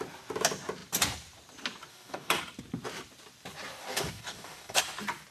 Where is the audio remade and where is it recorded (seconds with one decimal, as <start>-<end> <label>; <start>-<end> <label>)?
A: 0.0-1.9 recorded; 1.9-2.4 remade; 2.4-3.8 recorded; 3.8-4.8 remade; 4.8-5.3 recorded